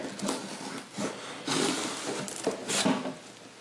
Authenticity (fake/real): real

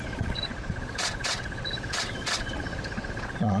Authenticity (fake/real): fake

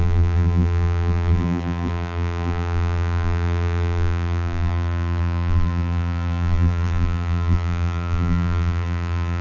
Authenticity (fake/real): fake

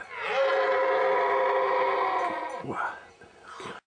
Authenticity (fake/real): real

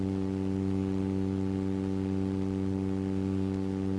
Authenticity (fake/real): real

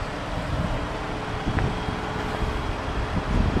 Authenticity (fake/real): real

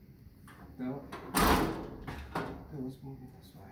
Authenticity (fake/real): real